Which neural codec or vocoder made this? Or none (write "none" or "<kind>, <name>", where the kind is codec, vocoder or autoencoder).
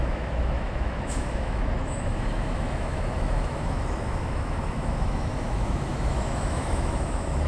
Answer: autoencoder, DAC-VAE